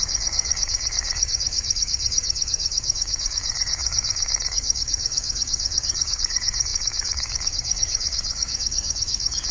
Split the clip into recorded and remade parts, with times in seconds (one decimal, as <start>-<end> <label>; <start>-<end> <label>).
0.0-9.5 remade